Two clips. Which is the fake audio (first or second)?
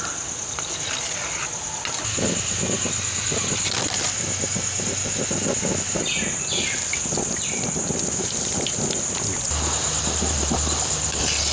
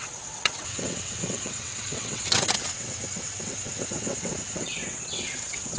second